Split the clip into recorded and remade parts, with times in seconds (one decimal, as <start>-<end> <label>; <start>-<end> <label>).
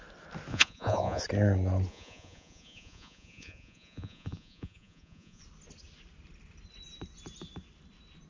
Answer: 0.0-0.5 recorded; 0.5-1.2 remade; 1.2-1.9 recorded; 1.9-5.4 remade; 5.4-8.3 recorded